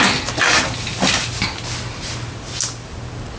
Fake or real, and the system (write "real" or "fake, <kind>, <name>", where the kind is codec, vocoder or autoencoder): real